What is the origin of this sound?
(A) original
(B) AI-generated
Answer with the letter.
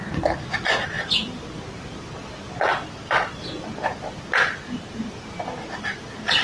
A